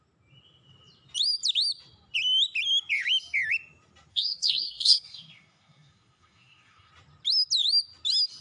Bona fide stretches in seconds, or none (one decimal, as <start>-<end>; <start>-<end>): 0.0-4.1; 6.9-8.4